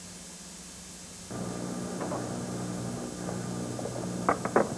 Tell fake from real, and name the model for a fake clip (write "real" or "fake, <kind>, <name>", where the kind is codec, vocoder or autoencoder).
real